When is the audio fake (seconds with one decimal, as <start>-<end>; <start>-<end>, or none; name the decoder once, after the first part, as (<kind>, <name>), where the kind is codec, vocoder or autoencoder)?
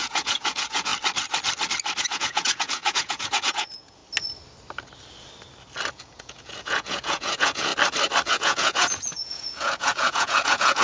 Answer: 0.0-0.9 (vocoder, Vocos); 2.0-4.0; 5.9-7.7; 8.3-10.8